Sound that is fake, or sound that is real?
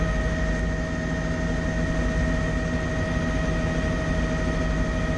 real